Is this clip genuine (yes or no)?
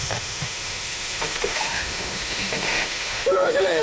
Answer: no